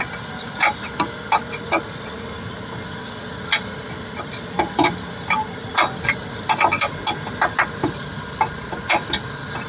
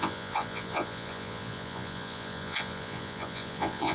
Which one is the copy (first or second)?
second